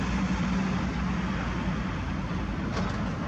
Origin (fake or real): real